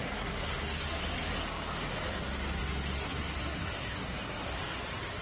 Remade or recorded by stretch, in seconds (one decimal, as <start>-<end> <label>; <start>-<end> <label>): 0.0-1.0 remade; 1.0-2.6 recorded; 2.6-4.5 remade; 4.5-5.2 recorded